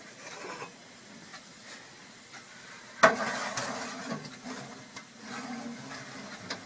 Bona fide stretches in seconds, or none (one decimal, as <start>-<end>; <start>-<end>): 0.0-5.7; 6.3-6.7